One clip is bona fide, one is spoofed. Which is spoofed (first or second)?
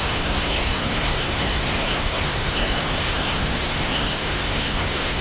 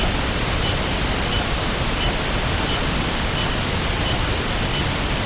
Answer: first